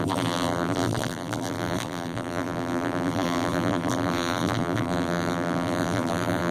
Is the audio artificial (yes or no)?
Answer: yes